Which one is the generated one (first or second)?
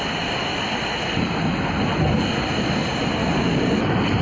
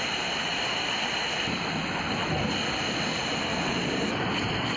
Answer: second